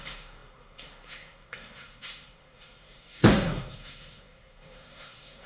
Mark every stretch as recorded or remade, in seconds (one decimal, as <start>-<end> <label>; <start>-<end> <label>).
0.0-5.5 remade